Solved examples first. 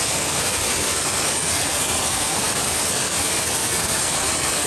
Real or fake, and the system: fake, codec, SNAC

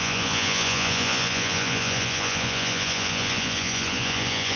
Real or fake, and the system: fake, vocoder, Vocos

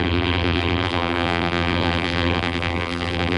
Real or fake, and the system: fake, vocoder, BigVGAN v2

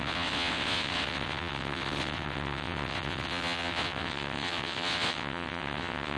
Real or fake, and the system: fake, vocoder, WaveNeXt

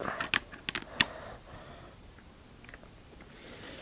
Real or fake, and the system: real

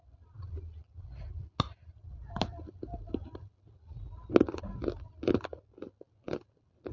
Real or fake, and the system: real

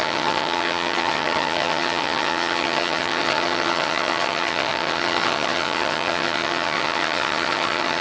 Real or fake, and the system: fake, vocoder, HiFi-GAN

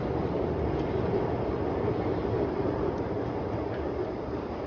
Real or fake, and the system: fake, vocoder, BigVGAN v2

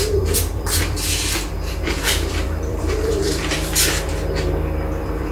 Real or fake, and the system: fake, vocoder, BigVGAN v2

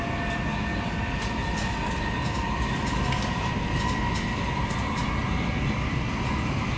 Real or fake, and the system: real